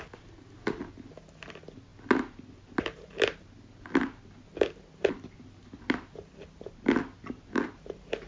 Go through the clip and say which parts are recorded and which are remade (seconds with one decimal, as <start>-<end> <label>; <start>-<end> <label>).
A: 0.0-8.3 recorded